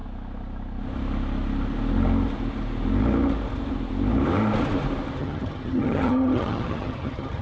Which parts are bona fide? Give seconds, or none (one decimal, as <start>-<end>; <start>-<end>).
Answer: 0.0-5.2